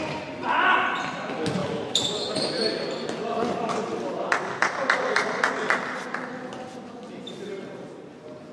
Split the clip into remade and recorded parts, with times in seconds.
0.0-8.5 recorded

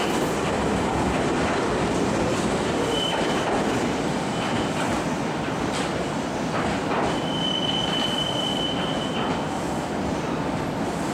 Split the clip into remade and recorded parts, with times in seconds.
0.0-11.1 remade